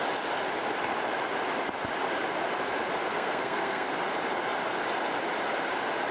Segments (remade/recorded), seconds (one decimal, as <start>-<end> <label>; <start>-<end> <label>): 0.0-3.1 recorded; 3.1-3.9 remade; 3.9-6.1 recorded

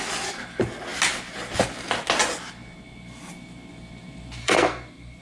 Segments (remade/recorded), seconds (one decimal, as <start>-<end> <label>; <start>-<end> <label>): 0.0-4.4 recorded; 4.4-5.2 remade

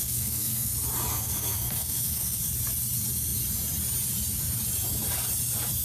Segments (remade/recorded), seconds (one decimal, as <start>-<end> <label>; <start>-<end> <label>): 0.0-0.7 remade; 0.7-1.1 recorded; 1.1-2.4 remade; 2.4-5.8 recorded

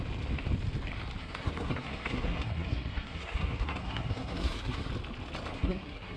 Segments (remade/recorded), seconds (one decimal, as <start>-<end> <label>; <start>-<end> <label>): 0.0-1.2 recorded; 1.2-4.9 remade; 4.9-5.5 recorded; 5.5-6.2 remade